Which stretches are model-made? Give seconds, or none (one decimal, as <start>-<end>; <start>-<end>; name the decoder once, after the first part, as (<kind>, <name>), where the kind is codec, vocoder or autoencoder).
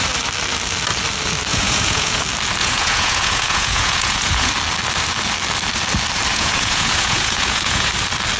1.5-2.2 (vocoder, Vocos); 2.6-4.5; 6.3-7.9